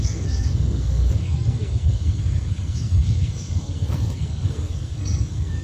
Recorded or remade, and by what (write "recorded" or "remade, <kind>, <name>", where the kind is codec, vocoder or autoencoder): remade, codec, SNAC